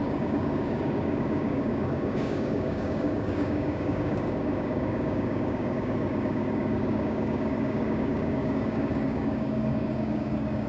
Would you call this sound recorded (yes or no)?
no